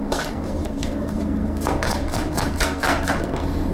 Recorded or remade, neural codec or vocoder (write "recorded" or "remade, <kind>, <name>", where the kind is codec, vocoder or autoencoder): remade, codec, SNAC